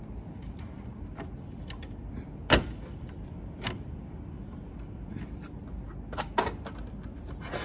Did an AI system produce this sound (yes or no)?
no